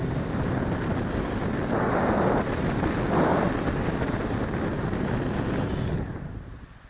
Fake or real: real